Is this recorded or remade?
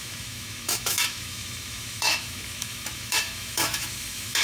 remade